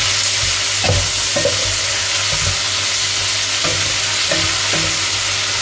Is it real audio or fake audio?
real